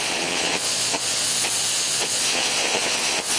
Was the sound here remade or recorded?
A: remade